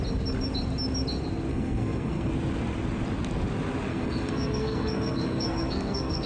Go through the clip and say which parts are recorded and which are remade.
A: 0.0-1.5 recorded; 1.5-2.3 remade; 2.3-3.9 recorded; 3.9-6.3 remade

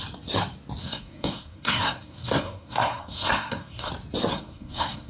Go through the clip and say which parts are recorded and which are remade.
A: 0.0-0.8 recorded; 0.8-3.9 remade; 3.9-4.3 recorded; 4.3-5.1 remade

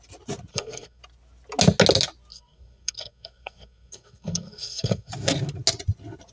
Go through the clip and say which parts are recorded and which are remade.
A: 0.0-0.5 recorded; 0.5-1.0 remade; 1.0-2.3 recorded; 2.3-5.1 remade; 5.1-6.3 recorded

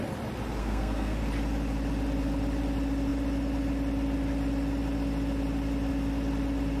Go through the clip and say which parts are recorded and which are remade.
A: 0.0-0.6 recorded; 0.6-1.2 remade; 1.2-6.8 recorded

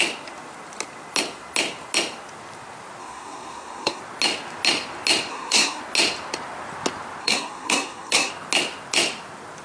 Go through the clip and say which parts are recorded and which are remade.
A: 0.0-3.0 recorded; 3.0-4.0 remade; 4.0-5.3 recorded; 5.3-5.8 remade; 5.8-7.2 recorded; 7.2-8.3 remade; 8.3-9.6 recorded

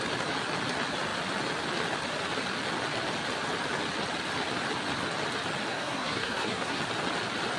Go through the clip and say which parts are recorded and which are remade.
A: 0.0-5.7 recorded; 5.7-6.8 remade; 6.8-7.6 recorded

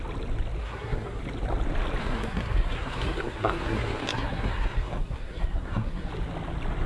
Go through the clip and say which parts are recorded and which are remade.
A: 0.0-0.6 recorded; 0.6-1.2 remade; 1.2-2.0 recorded; 2.0-6.1 remade; 6.1-6.9 recorded